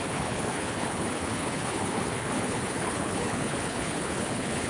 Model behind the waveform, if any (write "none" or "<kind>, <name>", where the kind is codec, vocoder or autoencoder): codec, HILCodec